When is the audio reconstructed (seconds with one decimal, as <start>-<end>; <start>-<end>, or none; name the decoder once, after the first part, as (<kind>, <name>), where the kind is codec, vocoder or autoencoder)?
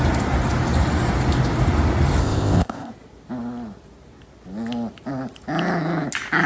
2.2-2.9 (codec, ZipCodec)